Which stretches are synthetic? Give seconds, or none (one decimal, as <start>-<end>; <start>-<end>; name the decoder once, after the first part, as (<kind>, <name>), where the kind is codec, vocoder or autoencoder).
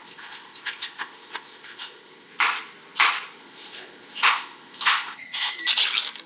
0.0-2.3 (codec, ZipCodec); 3.4-5.6